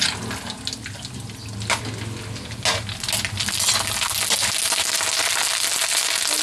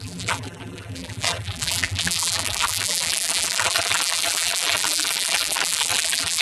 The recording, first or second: first